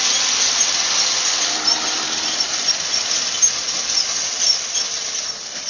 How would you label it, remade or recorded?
recorded